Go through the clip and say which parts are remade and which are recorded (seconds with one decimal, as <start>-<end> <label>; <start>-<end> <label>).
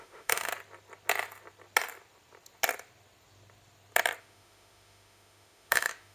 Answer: 0.0-0.5 remade; 0.5-4.2 recorded; 4.2-6.1 remade